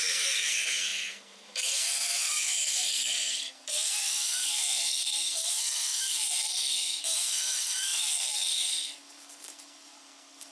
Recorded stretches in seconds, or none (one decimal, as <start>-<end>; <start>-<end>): none